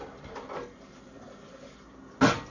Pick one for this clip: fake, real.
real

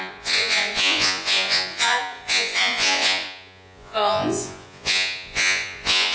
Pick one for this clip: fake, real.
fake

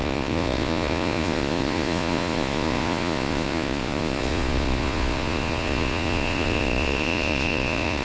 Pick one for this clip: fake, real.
fake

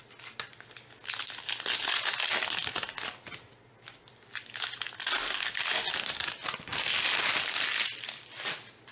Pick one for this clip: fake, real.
real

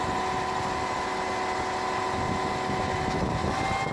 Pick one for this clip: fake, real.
real